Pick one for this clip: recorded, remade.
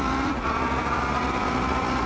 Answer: remade